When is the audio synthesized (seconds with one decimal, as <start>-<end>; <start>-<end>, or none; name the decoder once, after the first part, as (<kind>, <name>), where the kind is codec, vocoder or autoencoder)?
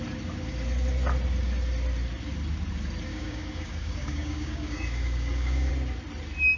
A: 3.1-5.7 (codec, DAC)